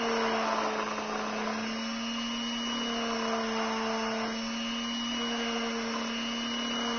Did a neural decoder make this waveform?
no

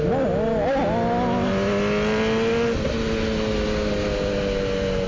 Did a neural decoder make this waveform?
no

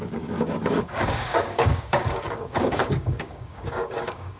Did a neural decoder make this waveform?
yes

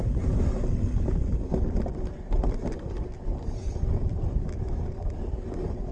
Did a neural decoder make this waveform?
no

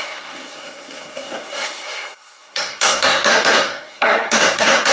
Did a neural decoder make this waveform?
yes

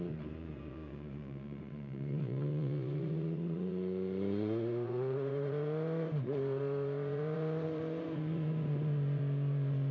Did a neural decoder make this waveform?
yes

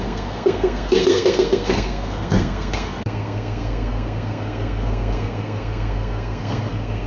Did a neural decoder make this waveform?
yes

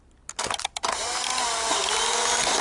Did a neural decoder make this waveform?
no